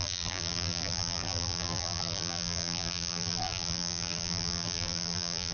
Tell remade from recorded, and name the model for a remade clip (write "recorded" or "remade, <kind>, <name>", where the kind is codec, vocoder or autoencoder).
remade, vocoder, BigVGAN v2